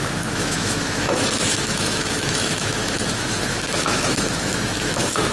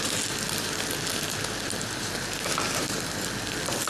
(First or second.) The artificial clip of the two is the first